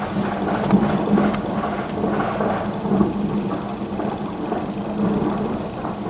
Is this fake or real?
real